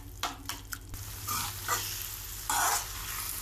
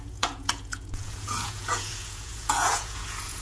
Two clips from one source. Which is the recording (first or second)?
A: first